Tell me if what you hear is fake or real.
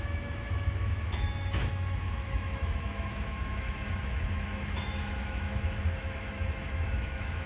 fake